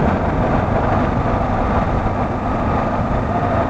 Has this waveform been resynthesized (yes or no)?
no